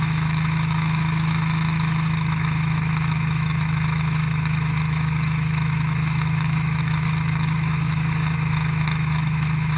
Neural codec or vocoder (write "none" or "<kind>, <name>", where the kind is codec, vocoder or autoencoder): autoencoder, DAC-VAE